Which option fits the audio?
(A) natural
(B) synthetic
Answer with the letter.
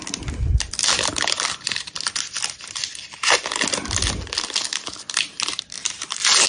A